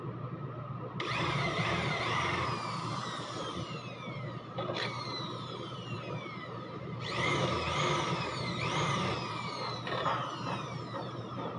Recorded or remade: remade